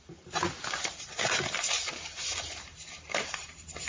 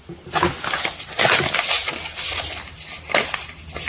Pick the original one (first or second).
second